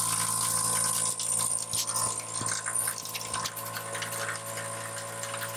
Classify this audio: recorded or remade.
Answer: recorded